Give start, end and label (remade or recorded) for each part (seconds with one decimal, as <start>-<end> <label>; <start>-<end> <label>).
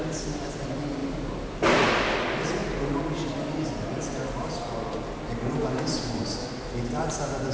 0.0-7.5 recorded